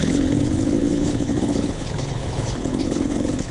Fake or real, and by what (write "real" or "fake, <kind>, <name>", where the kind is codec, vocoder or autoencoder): fake, codec, HILCodec